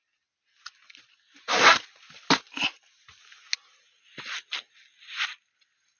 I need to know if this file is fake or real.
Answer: real